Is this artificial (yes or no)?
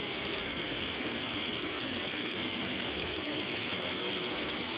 yes